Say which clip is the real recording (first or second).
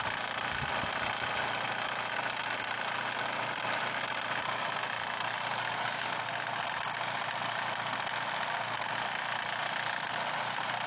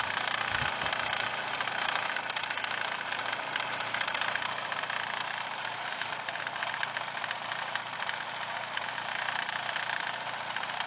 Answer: first